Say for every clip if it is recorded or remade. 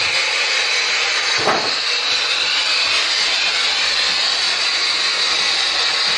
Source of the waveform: recorded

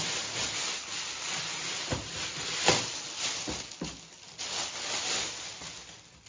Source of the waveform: recorded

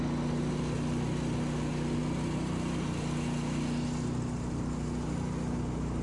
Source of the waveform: recorded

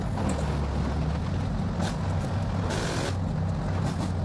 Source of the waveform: recorded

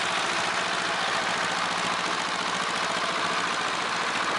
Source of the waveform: recorded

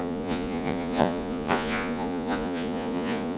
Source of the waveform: remade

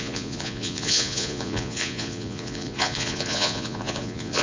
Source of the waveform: remade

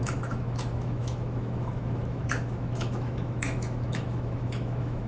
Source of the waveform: remade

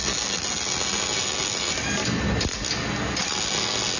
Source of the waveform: recorded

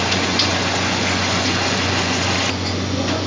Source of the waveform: remade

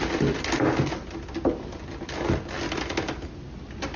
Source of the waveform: recorded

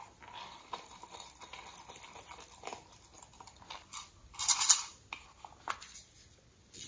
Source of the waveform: recorded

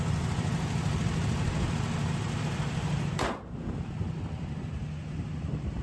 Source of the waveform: recorded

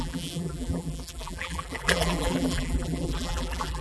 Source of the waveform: remade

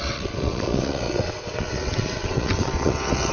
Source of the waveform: remade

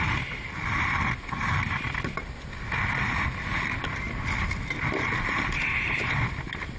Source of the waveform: recorded